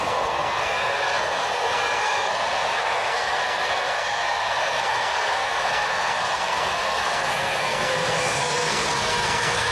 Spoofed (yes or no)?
yes